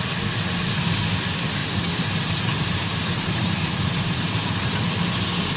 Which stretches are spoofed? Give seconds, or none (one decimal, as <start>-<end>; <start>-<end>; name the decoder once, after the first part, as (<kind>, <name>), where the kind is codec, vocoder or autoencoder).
1.6-4.7 (vocoder, BigVGAN v2)

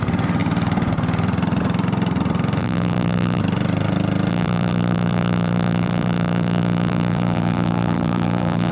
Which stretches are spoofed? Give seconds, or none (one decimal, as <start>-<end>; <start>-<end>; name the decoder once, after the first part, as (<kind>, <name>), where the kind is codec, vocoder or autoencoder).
2.6-3.4 (vocoder, BigVGAN v2); 4.3-8.7

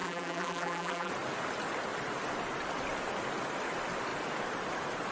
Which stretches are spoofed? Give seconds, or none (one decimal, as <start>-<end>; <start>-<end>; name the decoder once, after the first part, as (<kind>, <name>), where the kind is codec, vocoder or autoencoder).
0.0-1.1 (vocoder, BigVGAN v2)

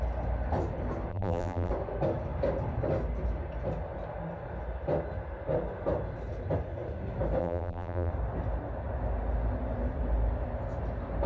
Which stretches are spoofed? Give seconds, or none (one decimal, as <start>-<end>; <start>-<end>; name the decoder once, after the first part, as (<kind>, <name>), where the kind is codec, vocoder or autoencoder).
1.1-1.7 (vocoder, BigVGAN v2); 7.4-8.1

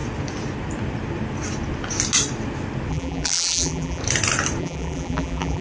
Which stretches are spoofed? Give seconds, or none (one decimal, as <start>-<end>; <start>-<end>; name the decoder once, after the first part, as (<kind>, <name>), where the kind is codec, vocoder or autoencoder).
2.9-4.0 (vocoder, BigVGAN v2); 4.6-5.6

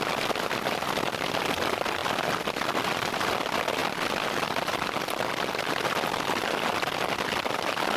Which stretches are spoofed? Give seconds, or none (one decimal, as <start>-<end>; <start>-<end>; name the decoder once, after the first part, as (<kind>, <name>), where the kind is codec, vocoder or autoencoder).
none